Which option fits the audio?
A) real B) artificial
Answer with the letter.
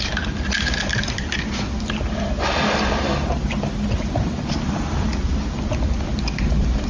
A